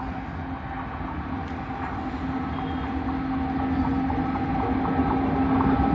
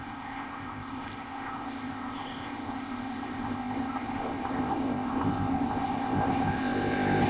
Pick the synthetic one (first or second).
second